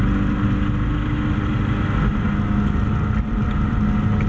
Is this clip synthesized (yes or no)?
no